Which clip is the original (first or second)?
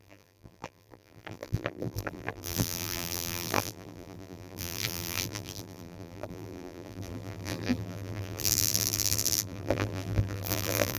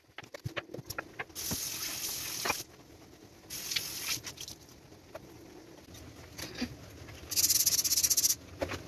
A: second